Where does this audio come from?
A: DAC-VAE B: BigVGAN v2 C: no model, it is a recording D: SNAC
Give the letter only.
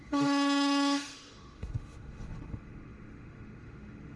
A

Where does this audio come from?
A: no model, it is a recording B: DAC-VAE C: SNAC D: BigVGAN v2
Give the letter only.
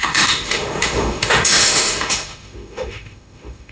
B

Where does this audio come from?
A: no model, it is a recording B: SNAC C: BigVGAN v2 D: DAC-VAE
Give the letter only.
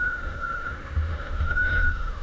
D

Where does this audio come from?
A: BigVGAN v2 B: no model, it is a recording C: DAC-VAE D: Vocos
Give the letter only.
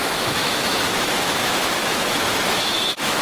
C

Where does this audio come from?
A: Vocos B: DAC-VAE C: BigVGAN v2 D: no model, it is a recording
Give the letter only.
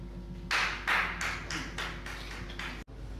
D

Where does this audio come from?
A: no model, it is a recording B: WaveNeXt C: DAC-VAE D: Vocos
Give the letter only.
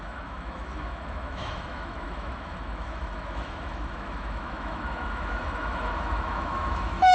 C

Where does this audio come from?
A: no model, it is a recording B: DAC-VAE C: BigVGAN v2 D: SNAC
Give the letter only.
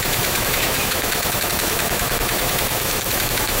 B